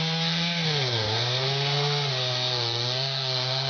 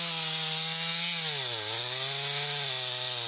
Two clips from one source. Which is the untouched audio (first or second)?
second